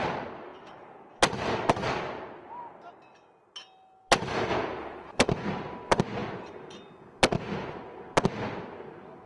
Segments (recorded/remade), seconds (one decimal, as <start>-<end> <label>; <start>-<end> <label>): 0.0-0.5 recorded; 0.5-1.0 remade; 1.0-4.5 recorded; 4.5-5.2 remade; 5.2-9.3 recorded